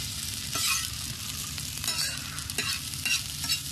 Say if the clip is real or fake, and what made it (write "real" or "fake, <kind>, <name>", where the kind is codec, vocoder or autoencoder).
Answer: real